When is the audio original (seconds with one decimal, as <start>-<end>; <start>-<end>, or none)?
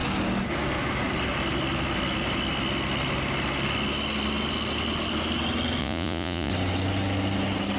0.0-5.8; 6.5-7.8